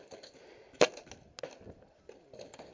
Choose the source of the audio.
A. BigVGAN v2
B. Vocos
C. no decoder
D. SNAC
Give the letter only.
C